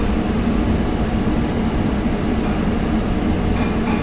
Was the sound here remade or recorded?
recorded